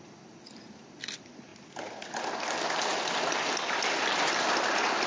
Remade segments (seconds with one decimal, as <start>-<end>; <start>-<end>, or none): none